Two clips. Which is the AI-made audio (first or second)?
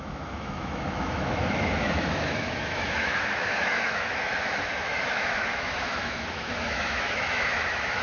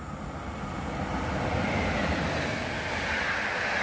first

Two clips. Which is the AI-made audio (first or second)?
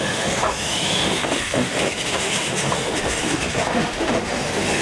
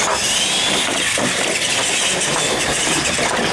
first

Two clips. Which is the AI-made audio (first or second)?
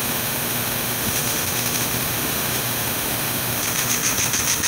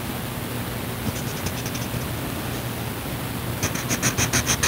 first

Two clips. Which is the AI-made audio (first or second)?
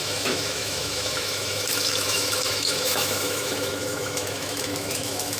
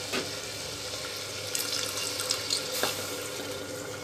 first